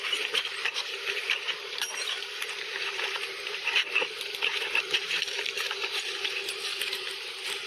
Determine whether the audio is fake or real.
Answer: fake